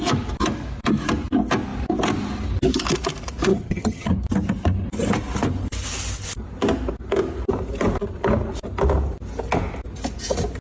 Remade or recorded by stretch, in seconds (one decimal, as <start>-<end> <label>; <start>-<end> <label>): 0.0-3.5 recorded; 3.5-4.1 remade; 4.1-10.6 recorded